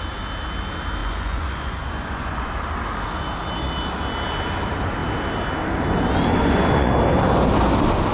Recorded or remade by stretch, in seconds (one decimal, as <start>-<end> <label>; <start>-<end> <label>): 0.0-1.0 recorded; 1.0-2.5 remade; 2.5-6.3 recorded; 6.3-6.9 remade; 6.9-8.1 recorded